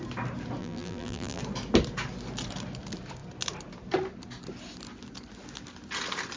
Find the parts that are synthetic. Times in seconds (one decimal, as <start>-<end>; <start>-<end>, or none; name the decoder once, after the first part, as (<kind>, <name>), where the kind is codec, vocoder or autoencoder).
0.6-1.4 (vocoder, BigVGAN v2)